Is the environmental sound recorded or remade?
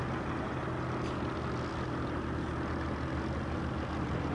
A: recorded